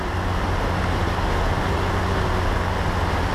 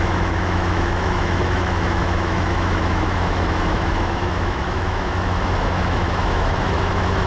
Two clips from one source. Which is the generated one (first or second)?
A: second